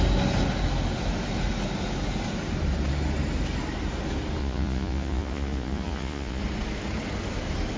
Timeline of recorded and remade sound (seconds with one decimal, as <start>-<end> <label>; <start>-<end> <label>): 0.0-4.4 recorded; 4.4-6.4 remade; 6.4-7.8 recorded